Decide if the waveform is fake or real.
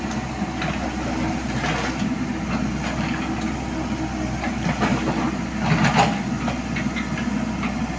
real